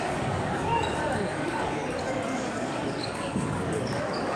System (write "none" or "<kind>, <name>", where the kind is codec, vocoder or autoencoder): codec, DAC